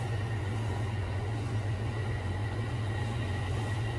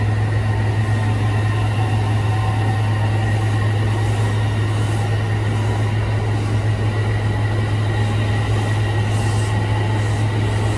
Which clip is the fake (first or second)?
first